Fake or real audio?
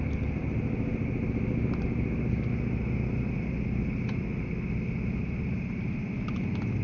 real